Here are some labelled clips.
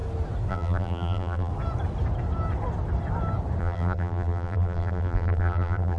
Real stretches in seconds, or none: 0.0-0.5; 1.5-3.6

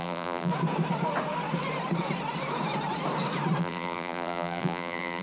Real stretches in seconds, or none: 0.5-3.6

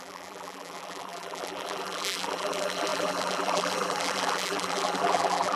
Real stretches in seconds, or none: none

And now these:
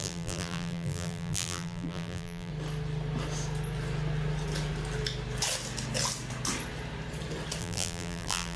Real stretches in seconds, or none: 2.5-7.6

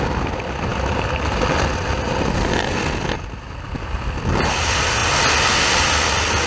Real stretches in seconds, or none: 0.0-6.5

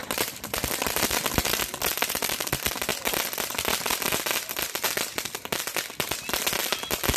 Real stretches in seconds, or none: 0.0-7.2

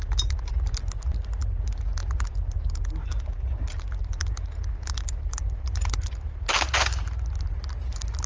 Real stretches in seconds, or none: 0.0-8.3

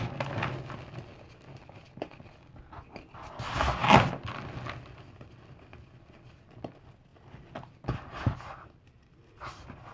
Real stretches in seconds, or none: 0.0-9.9